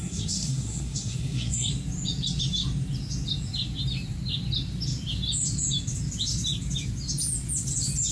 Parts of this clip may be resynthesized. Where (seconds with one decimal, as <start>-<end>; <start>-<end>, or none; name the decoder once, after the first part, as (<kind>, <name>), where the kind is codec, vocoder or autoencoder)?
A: 0.0-1.7 (codec, SNAC)